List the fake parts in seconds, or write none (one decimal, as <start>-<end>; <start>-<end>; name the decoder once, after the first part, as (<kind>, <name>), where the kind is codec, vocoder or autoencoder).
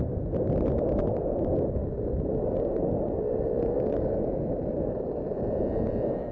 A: none